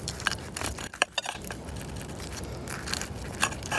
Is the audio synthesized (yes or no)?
yes